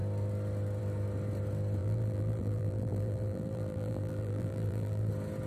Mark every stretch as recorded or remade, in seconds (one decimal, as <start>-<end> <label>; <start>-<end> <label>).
0.0-1.8 recorded; 1.8-5.1 remade; 5.1-5.5 recorded